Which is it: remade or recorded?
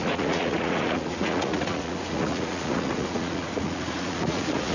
remade